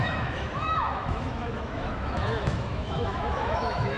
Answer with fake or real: fake